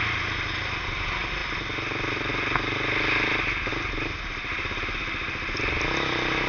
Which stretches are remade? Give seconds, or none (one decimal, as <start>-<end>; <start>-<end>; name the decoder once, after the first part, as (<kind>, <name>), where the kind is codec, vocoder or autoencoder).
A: none